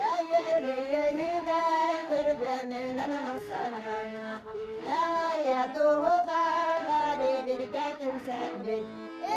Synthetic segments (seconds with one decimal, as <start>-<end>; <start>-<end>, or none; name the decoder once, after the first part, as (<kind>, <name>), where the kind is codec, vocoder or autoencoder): 0.0-5.5 (autoencoder, DAC-VAE); 6.1-7.0; 7.6-8.6